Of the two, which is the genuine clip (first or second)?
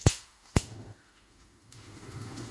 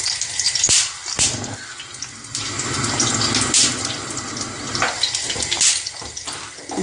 second